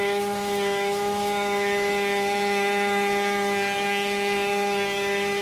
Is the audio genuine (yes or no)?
no